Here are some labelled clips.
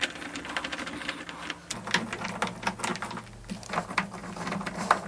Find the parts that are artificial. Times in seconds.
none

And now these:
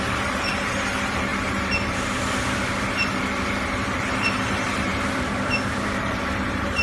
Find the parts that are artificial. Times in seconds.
4.9-6.2 (vocoder, BigVGAN v2)

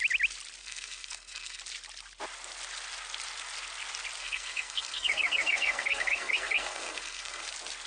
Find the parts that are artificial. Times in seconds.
0.6-1.6 (codec, SNAC); 4.2-7.5

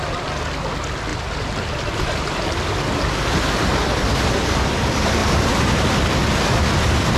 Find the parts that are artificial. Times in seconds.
1.1-2.7 (vocoder, BigVGAN v2); 5.2-6.1

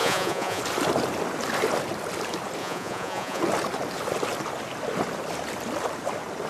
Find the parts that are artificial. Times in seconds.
0.0-0.6 (vocoder, Vocos); 2.6-3.4